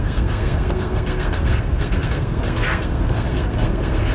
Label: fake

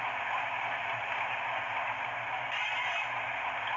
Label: real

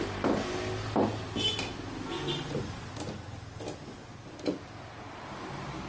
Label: real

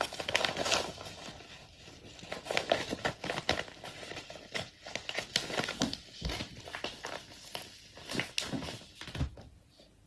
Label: real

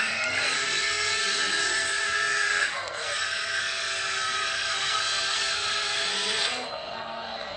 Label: fake